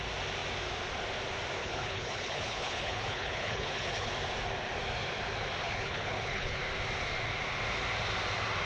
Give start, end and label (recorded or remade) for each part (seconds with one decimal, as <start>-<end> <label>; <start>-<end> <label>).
0.0-1.6 recorded; 1.6-4.1 remade; 4.1-5.6 recorded; 5.6-6.6 remade; 6.6-8.7 recorded